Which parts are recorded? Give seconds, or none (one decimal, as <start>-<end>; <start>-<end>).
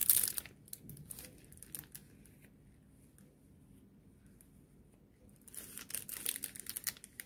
0.0-7.3